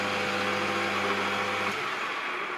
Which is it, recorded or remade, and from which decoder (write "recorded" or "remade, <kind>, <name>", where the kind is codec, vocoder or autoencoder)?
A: recorded